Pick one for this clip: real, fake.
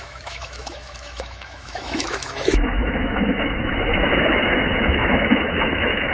fake